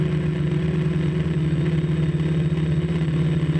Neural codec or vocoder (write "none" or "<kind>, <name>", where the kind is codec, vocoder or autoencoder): none